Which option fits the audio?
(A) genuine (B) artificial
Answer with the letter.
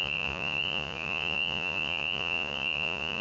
B